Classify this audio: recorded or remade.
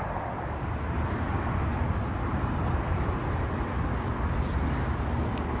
recorded